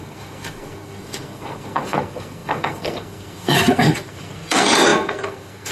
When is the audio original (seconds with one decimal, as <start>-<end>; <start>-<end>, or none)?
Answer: none